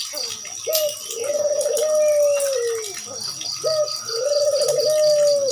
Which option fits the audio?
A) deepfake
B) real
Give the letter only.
B